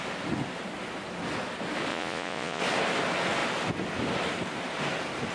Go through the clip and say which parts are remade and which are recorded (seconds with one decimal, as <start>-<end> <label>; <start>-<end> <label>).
0.0-1.9 recorded; 1.9-2.6 remade; 2.6-5.3 recorded

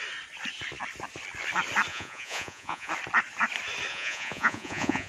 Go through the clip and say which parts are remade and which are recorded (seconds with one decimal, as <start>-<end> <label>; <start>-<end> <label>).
0.0-1.9 recorded; 1.9-2.9 remade; 2.9-3.9 recorded; 3.9-5.1 remade

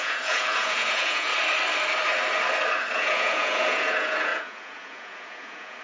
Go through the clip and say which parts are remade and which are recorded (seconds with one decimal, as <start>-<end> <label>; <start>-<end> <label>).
0.0-1.3 remade; 1.3-2.9 recorded; 2.9-5.8 remade

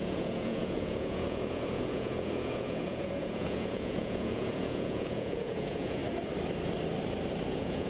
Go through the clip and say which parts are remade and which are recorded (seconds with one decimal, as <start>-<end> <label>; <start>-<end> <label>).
0.0-6.0 remade; 6.0-7.5 recorded; 7.5-7.9 remade